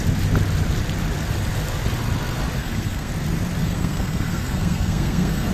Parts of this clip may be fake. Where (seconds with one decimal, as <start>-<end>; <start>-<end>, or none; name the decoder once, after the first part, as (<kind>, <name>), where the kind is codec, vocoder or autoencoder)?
2.6-3.1 (codec, SNAC); 3.6-5.5